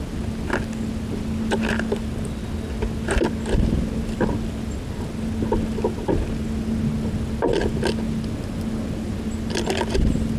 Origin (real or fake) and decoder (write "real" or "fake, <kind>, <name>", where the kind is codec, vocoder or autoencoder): real